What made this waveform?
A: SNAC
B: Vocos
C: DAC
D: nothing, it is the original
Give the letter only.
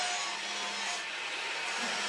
D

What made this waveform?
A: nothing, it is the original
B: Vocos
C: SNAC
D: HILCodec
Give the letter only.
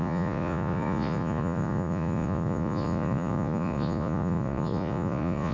B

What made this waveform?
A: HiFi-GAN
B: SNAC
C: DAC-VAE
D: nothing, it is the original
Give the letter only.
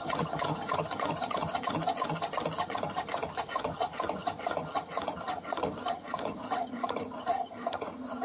A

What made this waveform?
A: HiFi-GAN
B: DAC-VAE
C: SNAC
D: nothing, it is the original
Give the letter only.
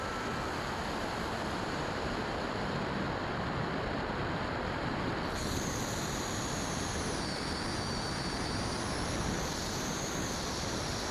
D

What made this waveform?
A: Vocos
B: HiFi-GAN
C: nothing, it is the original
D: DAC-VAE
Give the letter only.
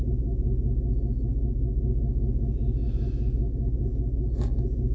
D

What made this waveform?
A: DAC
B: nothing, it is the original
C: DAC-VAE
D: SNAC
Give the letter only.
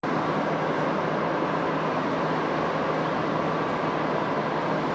B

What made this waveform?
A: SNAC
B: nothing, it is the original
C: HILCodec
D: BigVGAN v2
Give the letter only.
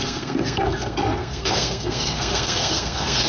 A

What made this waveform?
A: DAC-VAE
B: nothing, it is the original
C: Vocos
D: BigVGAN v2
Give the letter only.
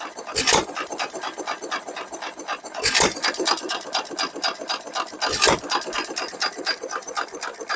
B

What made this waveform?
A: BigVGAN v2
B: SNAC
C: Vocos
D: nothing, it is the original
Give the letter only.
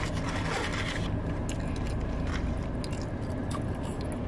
D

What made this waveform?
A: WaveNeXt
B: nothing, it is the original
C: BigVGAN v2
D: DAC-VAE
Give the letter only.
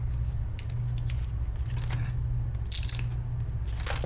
B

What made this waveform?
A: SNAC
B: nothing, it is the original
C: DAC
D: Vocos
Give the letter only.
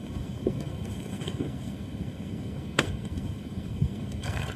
A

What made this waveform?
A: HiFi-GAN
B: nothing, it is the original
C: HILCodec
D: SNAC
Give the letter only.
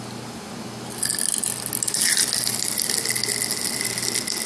B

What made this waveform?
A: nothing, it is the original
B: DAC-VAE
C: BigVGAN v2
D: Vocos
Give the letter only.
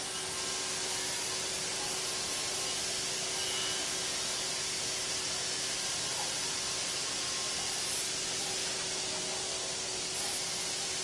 A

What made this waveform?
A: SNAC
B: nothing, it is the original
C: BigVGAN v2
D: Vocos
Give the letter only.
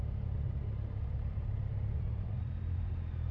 C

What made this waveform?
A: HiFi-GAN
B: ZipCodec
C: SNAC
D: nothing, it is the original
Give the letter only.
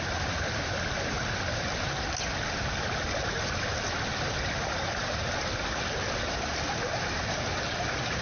D